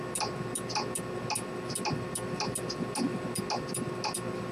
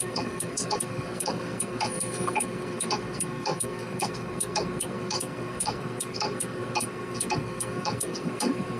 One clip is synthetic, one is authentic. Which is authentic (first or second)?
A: first